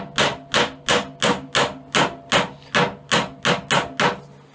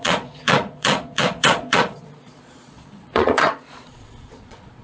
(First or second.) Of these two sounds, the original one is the first